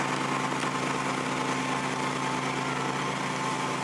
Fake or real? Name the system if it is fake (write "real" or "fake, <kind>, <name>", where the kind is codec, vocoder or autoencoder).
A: real